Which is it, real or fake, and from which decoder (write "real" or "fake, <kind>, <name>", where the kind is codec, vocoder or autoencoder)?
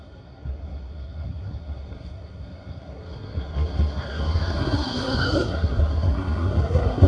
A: fake, codec, SNAC